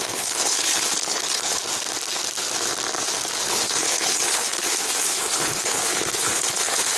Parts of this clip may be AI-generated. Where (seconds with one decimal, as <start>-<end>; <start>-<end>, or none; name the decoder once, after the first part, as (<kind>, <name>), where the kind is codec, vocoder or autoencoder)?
0.0-1.6 (codec, HILCodec); 3.5-7.0